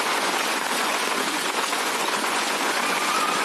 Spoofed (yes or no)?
yes